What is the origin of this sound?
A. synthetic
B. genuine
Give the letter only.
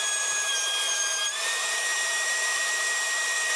A